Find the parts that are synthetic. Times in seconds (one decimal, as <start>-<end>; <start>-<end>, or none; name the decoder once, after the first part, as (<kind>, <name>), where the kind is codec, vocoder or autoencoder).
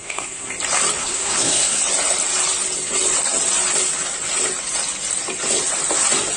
0.0-0.5 (codec, SNAC); 1.0-1.8